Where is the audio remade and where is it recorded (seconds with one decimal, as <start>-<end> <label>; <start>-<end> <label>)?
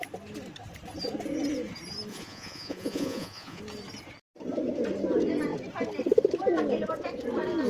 0.0-2.1 recorded; 2.1-3.6 remade; 3.6-7.7 recorded